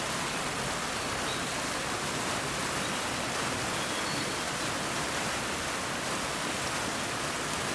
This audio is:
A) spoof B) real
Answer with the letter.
B